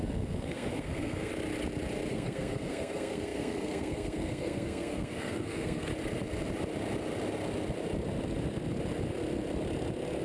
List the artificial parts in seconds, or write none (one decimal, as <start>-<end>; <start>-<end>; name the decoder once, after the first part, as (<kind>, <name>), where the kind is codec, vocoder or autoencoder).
0.0-1.3 (codec, SNAC); 2.1-5.9